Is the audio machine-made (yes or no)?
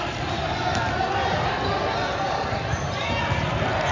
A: no